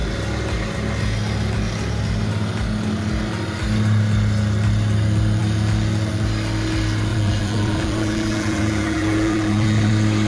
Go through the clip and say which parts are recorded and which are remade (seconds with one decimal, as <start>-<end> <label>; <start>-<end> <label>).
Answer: 0.0-7.1 recorded; 7.1-9.9 remade; 9.9-10.3 recorded